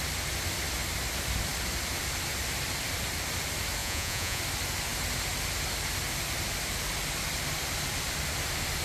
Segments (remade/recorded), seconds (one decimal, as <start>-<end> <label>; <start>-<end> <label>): 0.0-3.8 recorded; 3.8-4.4 remade; 4.4-8.8 recorded